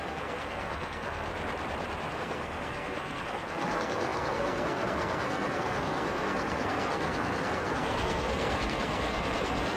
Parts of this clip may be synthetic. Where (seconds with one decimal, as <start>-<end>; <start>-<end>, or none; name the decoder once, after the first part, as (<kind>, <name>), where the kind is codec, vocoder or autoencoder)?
0.0-1.3 (codec, SNAC); 2.1-9.8